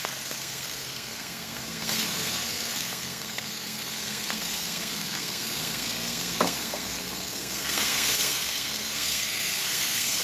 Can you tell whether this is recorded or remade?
remade